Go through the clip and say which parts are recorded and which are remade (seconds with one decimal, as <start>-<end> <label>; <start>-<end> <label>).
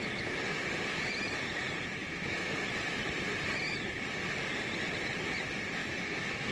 0.0-5.8 recorded; 5.8-6.5 remade